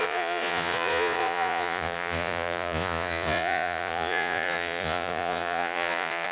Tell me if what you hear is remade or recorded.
remade